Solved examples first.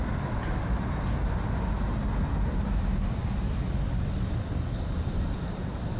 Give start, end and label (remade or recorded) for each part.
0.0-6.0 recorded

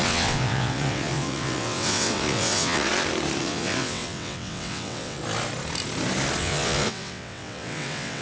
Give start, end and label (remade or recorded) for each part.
0.0-2.9 remade; 2.9-3.4 recorded; 3.4-5.2 remade; 5.2-6.4 recorded; 6.4-8.2 remade